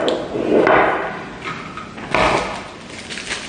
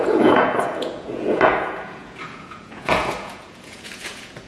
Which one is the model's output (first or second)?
second